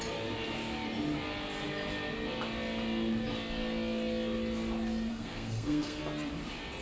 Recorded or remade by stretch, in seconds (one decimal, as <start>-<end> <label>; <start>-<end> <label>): 0.0-5.1 recorded; 5.1-6.0 remade; 6.0-6.8 recorded